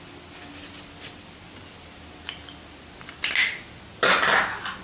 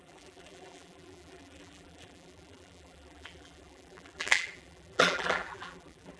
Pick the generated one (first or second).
second